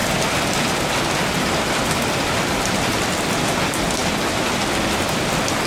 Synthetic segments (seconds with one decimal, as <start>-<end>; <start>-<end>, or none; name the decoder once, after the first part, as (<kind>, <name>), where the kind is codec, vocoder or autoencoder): none